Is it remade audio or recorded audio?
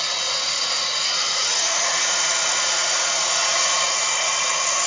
remade